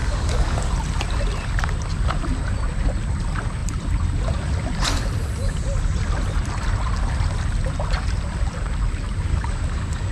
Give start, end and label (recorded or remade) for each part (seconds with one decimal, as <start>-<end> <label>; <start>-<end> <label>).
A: 0.0-0.7 remade; 0.7-9.3 recorded; 9.3-10.1 remade